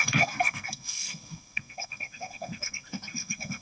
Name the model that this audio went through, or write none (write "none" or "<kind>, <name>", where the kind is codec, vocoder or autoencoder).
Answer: codec, SNAC